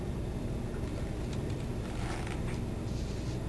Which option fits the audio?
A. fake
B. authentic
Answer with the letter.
A